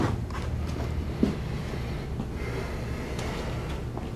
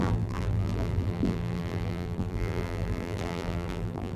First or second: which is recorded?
first